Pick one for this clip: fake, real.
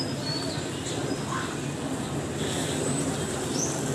real